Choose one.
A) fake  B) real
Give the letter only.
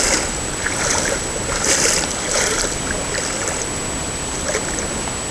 B